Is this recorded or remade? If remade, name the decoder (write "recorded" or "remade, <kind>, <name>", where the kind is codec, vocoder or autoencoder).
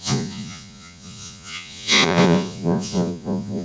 remade, vocoder, Vocos